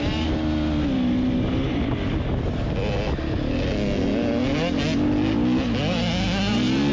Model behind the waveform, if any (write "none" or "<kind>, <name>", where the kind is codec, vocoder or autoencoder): none